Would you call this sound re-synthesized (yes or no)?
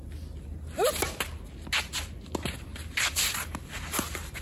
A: no